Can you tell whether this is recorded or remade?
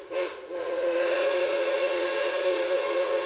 remade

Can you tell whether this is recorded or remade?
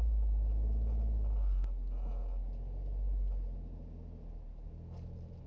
recorded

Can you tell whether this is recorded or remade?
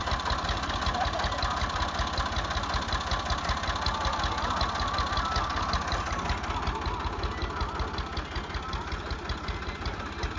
recorded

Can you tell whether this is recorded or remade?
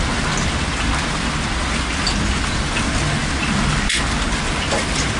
recorded